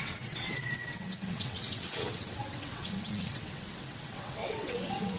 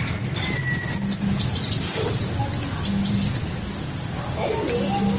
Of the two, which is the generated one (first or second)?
first